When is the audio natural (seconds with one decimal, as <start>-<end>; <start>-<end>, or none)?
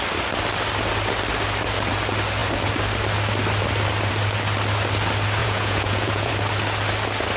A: 0.0-5.4; 6.3-7.4